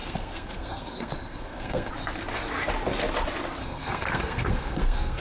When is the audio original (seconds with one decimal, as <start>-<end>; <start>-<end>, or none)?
1.9-3.6